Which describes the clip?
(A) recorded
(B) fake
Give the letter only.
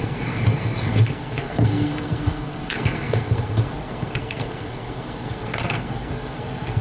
B